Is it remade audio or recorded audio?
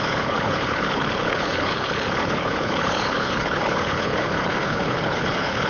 remade